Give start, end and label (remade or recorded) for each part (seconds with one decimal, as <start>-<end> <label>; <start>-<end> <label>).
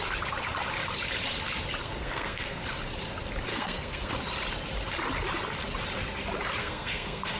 0.0-1.8 recorded; 1.8-2.6 remade; 2.6-3.5 recorded; 3.5-4.1 remade; 4.1-6.6 recorded; 6.6-7.4 remade